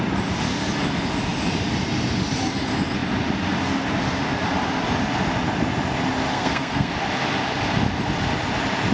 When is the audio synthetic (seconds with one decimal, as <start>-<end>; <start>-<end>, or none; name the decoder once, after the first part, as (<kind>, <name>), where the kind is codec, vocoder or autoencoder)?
6.3-6.9 (codec, SNAC)